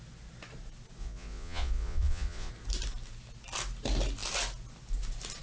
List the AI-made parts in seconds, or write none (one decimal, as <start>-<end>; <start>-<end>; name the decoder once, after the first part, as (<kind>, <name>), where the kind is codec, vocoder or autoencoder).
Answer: 1.0-2.5 (vocoder, Vocos)